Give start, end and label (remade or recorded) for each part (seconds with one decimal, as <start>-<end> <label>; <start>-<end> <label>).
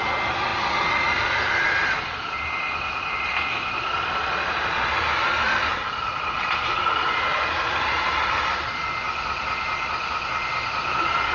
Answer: 0.0-11.3 recorded